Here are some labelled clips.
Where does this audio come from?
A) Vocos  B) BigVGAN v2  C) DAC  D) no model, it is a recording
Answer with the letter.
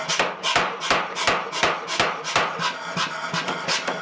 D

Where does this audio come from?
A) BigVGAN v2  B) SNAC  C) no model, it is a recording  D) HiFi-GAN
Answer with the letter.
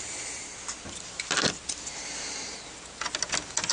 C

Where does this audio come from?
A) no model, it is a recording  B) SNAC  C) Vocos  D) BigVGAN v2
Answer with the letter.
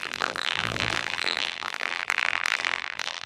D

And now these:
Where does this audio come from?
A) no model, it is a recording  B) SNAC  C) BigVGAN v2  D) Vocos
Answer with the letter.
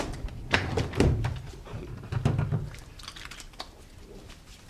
C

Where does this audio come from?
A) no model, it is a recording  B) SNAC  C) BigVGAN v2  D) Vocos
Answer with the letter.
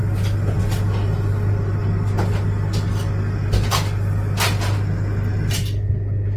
A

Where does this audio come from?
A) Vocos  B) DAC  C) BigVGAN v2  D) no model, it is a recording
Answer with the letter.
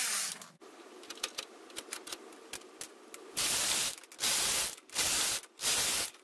D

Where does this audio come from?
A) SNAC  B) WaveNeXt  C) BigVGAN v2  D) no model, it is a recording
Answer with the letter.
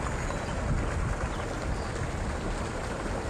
D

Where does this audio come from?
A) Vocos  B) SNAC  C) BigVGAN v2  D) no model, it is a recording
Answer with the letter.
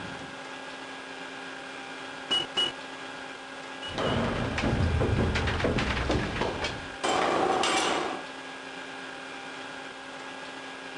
D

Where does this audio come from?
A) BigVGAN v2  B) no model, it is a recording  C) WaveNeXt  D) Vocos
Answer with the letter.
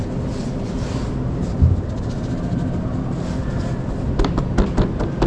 B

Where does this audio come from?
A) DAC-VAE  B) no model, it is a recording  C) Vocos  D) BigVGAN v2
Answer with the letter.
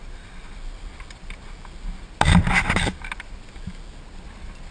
B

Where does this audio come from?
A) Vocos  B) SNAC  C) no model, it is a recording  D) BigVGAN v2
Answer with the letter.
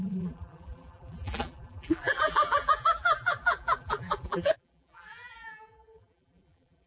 D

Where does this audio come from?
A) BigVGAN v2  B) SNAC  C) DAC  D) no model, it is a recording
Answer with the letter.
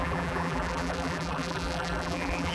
A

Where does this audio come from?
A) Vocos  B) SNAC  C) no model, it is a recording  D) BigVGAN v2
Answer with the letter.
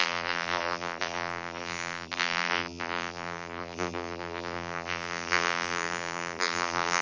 D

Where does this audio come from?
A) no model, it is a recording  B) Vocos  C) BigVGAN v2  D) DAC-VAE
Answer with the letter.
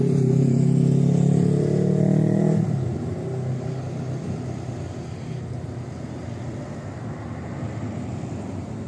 A